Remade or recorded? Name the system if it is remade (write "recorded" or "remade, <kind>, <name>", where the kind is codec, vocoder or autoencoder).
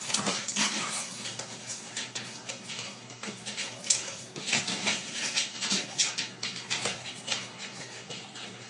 remade, codec, SNAC